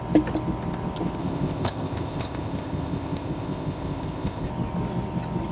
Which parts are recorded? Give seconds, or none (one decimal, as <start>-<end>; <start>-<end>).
0.0-1.2; 4.5-5.5